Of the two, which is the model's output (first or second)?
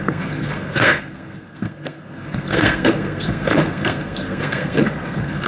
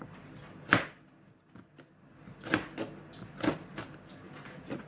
first